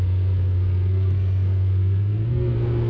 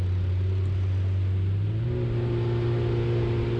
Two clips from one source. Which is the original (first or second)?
second